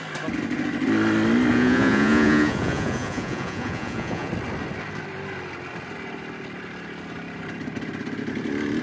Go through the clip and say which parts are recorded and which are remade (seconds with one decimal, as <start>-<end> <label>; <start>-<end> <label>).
0.0-1.5 recorded; 1.5-4.3 remade; 4.3-8.8 recorded